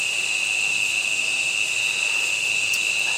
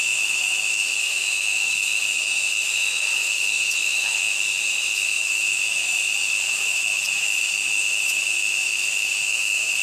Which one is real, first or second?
first